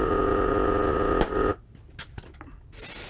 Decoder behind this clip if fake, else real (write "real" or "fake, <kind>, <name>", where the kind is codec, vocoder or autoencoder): real